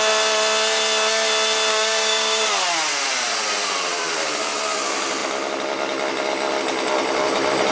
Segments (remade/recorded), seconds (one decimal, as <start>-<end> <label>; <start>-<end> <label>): 0.0-1.7 recorded; 1.7-2.4 remade; 2.4-7.7 recorded